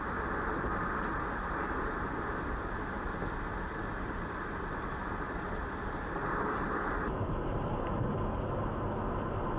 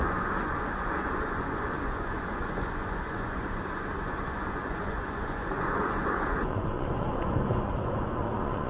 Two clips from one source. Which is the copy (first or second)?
second